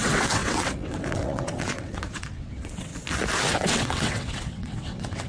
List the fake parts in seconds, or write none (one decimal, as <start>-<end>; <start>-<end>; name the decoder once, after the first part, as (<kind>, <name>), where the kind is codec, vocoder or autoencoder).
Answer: 0.0-2.9 (vocoder, WaveNeXt); 3.5-5.3